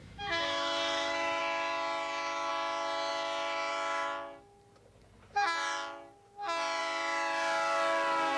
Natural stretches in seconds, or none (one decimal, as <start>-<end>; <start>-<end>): 1.4-8.4